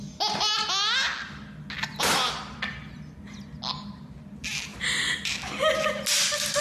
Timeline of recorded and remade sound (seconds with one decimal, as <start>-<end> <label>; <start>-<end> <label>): 0.0-6.6 recorded